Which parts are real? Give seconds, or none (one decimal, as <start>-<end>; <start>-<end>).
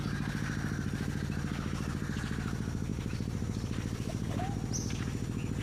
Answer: 0.0-2.9; 4.4-5.6